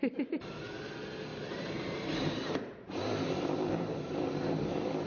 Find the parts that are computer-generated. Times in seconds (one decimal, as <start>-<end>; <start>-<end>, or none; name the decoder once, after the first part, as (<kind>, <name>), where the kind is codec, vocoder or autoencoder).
1.3-4.1 (vocoder, BigVGAN v2)

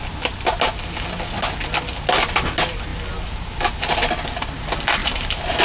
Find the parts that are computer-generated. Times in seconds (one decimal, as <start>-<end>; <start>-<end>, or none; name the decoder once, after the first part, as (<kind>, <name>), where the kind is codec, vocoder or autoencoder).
5.0-5.6 (vocoder, BigVGAN v2)

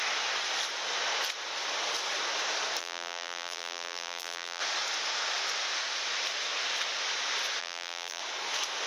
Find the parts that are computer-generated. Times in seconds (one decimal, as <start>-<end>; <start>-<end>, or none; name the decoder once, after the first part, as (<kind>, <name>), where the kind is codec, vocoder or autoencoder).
2.8-4.6 (vocoder, BigVGAN v2); 7.6-8.2

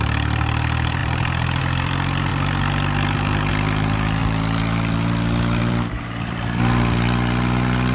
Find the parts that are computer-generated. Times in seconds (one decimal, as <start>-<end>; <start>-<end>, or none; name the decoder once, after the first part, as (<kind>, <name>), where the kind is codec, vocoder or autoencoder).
0.0-2.3 (vocoder, BigVGAN v2); 3.5-7.9

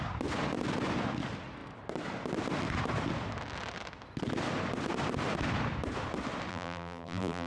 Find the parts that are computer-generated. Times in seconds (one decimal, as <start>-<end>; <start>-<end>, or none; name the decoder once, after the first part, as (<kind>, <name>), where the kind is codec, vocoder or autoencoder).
6.5-7.5 (vocoder, BigVGAN v2)

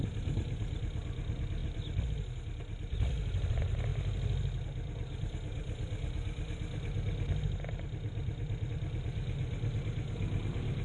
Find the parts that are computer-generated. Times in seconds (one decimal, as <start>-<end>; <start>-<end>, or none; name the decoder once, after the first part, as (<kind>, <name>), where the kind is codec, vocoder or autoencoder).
none

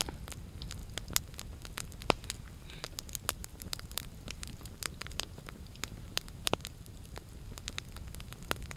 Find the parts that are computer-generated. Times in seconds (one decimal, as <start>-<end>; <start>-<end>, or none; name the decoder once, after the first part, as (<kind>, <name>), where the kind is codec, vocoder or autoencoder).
3.4-7.3 (vocoder, BigVGAN v2)

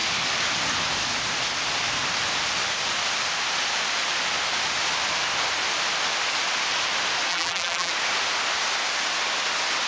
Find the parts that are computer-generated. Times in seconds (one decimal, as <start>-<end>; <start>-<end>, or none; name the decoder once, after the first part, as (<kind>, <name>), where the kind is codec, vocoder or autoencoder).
7.3-7.9 (vocoder, BigVGAN v2)